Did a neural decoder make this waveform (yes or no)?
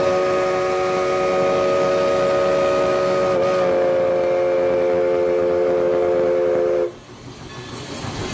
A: no